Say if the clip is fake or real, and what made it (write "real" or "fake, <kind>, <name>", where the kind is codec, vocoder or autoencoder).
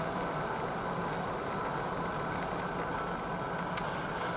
real